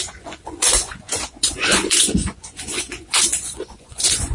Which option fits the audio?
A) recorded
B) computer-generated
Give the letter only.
B